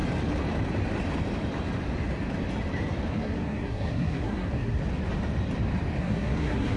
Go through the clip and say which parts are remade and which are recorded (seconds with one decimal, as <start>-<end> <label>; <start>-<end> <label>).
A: 0.0-3.1 recorded; 3.1-4.8 remade; 4.8-6.0 recorded; 6.0-6.8 remade